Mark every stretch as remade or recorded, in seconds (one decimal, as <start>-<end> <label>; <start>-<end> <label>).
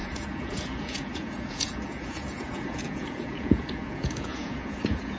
0.0-5.2 remade